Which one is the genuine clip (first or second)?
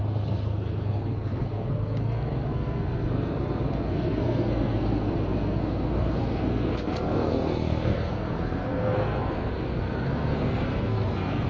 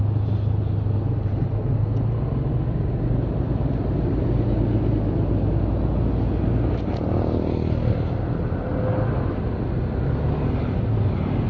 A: second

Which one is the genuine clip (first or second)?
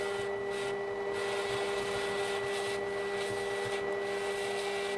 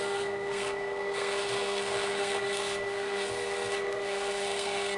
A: first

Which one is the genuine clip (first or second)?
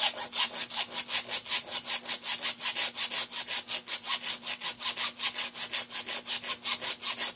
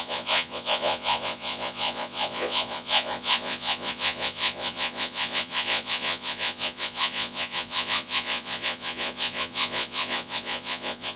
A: first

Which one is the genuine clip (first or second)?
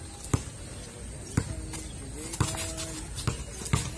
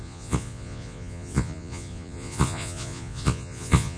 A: first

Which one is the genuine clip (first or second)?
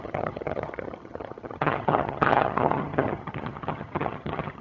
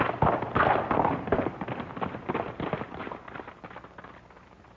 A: second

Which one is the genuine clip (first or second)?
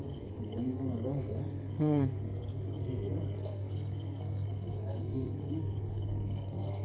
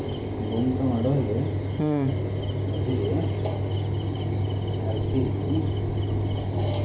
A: second